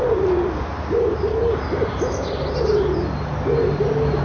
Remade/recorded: recorded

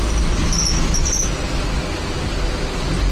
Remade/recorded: recorded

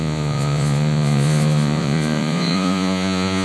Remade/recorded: remade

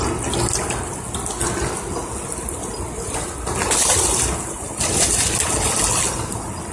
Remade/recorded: recorded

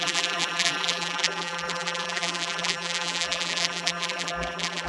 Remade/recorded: remade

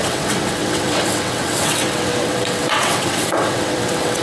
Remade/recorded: remade